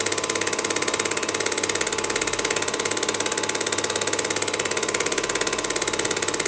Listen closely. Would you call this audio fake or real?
real